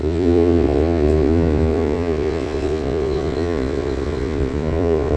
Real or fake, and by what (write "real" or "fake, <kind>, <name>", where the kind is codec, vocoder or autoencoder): fake, vocoder, Vocos